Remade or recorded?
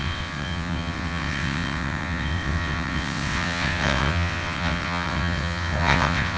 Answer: remade